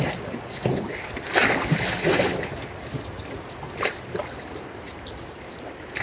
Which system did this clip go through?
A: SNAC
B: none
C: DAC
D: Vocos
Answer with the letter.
B